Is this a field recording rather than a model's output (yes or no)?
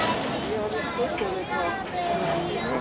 yes